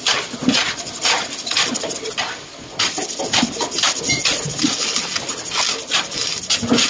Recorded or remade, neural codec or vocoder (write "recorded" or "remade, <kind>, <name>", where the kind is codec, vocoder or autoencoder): recorded